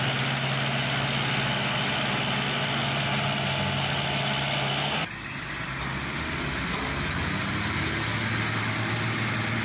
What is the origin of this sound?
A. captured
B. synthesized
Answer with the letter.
A